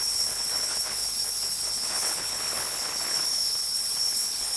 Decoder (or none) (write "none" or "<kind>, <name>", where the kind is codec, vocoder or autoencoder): codec, HILCodec